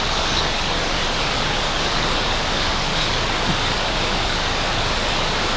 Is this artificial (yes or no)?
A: yes